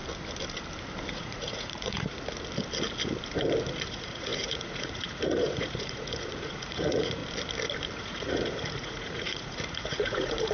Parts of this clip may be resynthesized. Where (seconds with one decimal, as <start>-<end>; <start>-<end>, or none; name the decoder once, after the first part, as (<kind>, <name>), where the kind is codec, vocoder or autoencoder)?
1.1-2.1 (vocoder, Vocos); 3.9-7.2; 8.0-10.5